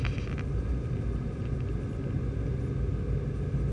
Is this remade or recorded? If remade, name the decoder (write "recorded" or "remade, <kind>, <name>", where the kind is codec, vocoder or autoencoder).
recorded